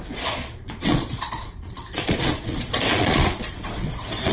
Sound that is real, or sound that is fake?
fake